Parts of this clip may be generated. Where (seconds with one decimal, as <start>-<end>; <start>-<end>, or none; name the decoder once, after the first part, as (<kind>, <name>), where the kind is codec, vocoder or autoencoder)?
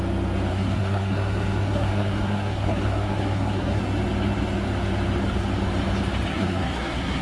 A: 0.5-3.8 (codec, SNAC); 6.3-7.2